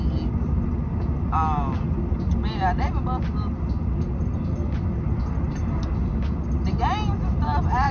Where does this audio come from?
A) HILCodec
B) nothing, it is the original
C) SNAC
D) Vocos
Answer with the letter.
B